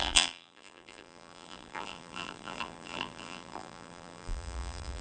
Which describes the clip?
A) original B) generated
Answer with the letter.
B